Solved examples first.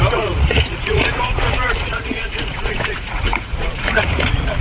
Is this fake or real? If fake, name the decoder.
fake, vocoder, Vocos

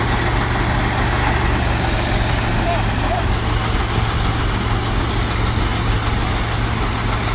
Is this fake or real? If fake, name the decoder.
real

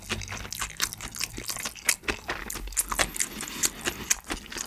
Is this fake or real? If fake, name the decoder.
real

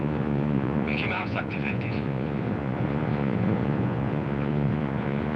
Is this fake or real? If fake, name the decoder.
fake, vocoder, Vocos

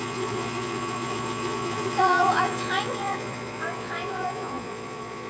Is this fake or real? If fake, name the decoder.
fake, vocoder, Vocos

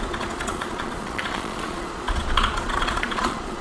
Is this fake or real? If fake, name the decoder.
fake, vocoder, Vocos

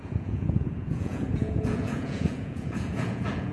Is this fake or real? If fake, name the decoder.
fake, vocoder, Vocos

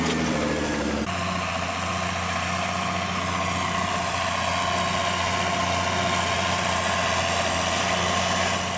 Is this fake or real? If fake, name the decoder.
real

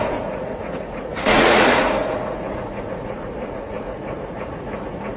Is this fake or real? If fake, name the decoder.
fake, vocoder, Vocos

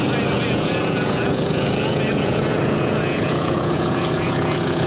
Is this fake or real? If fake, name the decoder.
fake, vocoder, Vocos